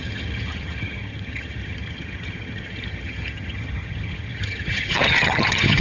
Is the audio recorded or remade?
remade